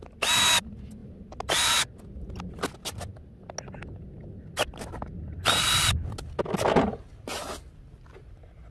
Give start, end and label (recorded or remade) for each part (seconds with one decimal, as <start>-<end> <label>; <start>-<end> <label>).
0.0-8.7 recorded